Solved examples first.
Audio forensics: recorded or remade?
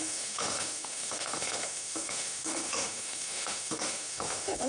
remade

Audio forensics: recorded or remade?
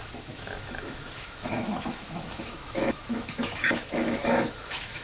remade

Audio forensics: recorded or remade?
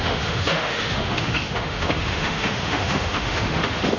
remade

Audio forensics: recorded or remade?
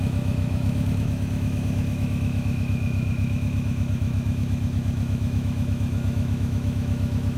remade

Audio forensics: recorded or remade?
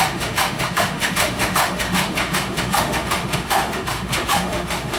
remade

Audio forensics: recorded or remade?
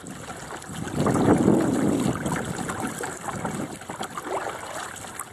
recorded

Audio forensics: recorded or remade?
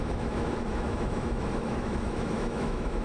remade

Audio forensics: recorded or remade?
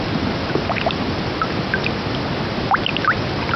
recorded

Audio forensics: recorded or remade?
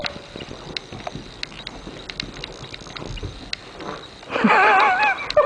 recorded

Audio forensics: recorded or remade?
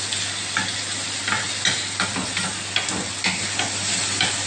recorded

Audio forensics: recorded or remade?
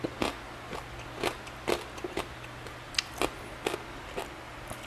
recorded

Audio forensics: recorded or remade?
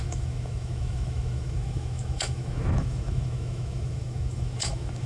remade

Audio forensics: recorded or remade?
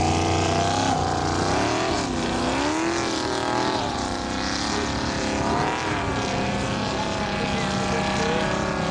recorded